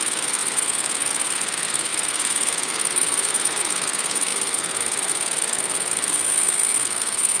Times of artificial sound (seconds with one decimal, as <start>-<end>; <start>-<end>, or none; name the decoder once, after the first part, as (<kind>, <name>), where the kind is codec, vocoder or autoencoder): 0.0-7.4 (codec, SNAC)